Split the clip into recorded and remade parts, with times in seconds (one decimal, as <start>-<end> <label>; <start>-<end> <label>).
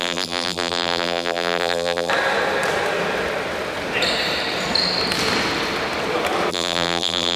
0.0-2.1 remade; 2.1-6.5 recorded; 6.5-7.4 remade